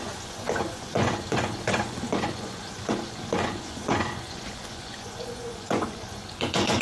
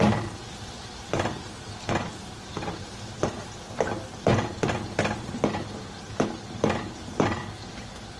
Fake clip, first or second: first